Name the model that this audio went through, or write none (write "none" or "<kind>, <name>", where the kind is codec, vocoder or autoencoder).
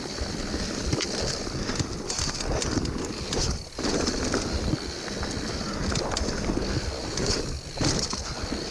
none